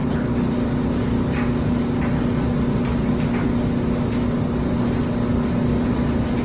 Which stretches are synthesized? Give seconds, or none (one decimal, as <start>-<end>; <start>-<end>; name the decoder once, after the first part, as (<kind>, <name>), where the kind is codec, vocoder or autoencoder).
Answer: none